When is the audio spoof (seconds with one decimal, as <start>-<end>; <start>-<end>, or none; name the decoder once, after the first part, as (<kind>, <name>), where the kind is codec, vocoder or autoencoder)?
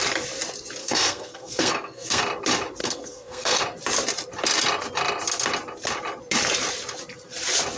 0.8-2.2 (codec, SNAC); 2.8-3.6